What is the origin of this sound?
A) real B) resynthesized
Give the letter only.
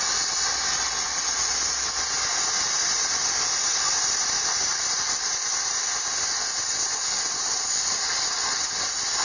A